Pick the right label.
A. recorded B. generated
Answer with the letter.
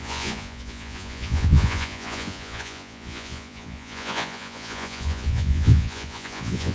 B